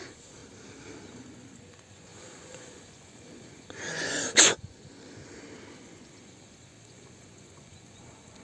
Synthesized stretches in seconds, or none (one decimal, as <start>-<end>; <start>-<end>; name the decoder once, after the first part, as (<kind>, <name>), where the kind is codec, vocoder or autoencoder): 0.0-0.4 (vocoder, Vocos); 1.0-5.2; 5.7-8.4